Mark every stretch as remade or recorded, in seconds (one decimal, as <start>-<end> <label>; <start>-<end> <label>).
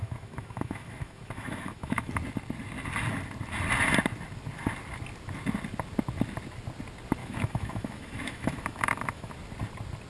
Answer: 0.0-2.1 remade; 2.1-7.2 recorded; 7.2-9.3 remade; 9.3-10.1 recorded